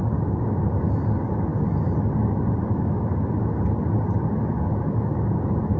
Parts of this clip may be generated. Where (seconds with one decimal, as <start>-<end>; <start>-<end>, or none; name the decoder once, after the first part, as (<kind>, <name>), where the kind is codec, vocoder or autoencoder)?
none